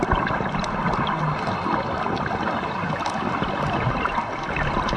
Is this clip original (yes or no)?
yes